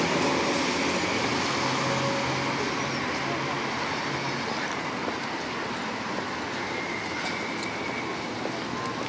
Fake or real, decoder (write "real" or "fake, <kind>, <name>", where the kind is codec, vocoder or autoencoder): real